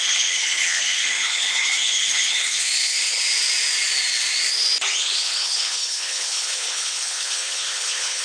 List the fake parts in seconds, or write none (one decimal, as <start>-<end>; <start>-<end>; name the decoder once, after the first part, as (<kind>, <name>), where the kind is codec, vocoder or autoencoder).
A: 0.0-3.2 (codec, HILCodec); 5.0-8.2